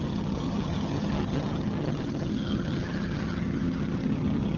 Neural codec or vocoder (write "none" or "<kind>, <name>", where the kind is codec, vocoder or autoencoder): vocoder, HiFi-GAN